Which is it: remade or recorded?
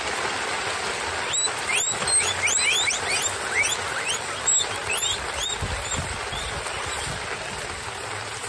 recorded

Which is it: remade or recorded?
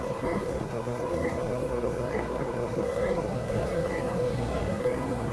remade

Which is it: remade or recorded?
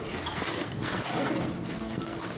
remade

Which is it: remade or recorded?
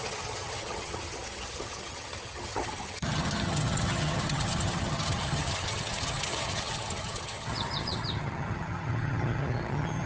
remade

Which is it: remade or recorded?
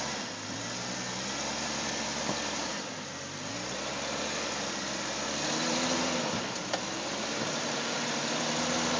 remade